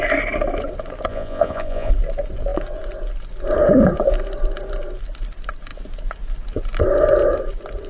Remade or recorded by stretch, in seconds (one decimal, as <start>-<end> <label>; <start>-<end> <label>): 0.0-1.1 recorded; 1.1-1.9 remade; 1.9-7.9 recorded